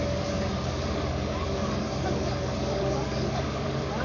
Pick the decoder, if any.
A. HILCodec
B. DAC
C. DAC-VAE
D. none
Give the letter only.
B